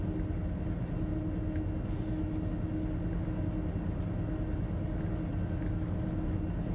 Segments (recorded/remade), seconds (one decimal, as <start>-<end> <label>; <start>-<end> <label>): 0.0-6.7 recorded